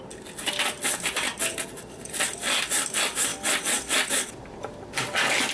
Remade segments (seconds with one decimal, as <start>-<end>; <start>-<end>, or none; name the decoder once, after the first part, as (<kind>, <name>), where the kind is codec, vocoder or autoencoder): 1.4-2.6 (vocoder, BigVGAN v2); 3.3-5.5